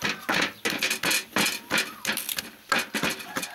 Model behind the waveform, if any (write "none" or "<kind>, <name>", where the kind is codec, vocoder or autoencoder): none